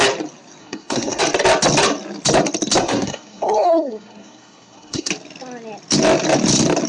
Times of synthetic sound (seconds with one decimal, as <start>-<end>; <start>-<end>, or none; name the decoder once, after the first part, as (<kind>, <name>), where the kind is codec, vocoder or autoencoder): 0.6-1.2 (codec, SNAC); 2.8-5.1